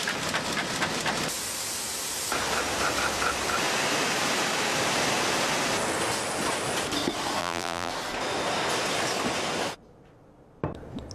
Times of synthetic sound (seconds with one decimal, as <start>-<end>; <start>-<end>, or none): 7.4-7.9